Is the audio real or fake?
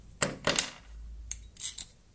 real